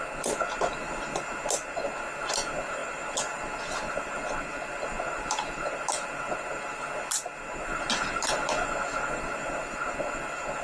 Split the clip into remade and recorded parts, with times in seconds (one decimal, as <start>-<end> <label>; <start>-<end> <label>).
0.0-10.6 recorded